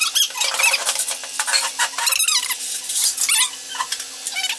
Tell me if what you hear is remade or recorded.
recorded